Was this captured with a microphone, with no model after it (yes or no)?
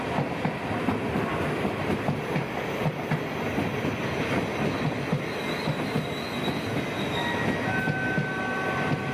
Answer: yes